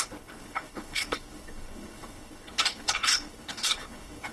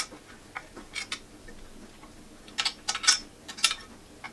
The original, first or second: second